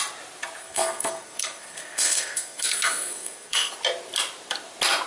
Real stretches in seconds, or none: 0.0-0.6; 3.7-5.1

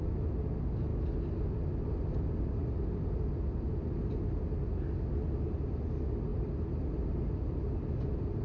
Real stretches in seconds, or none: 0.0-8.4

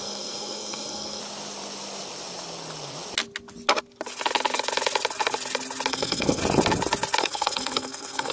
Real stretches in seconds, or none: 1.2-5.9; 6.4-7.2

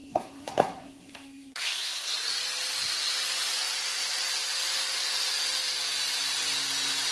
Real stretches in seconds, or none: 2.1-7.1

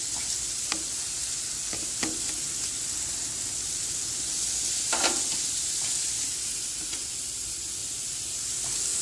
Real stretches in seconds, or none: 0.0-9.0